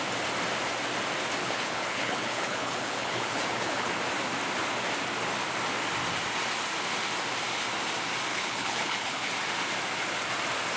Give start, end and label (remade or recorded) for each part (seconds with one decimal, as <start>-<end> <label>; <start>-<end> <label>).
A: 0.0-1.4 recorded; 1.4-3.9 remade; 3.9-8.3 recorded; 8.3-9.3 remade; 9.3-10.8 recorded